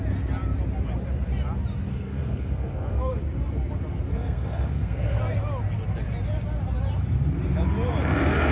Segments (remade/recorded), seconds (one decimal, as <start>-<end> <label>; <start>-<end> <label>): 0.0-1.9 recorded; 1.9-3.2 remade; 3.2-4.1 recorded; 4.1-5.2 remade; 5.2-8.5 recorded